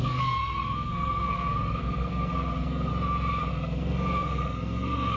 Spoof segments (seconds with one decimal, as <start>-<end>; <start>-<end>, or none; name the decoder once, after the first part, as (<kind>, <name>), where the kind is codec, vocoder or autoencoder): 0.0-2.9 (codec, SNAC); 3.5-5.2

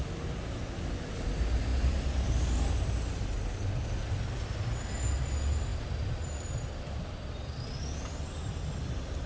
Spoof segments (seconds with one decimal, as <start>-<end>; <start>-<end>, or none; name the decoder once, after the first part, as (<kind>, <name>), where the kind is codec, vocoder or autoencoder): none

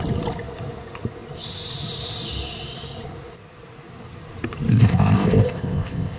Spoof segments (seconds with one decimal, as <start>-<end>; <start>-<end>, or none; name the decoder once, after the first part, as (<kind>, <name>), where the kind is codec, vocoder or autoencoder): 4.7-6.2 (codec, ZipCodec)

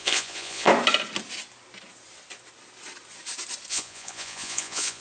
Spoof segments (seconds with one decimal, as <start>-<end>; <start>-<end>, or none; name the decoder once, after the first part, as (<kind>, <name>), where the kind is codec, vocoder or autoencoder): 0.0-0.7 (vocoder, Vocos); 3.7-5.0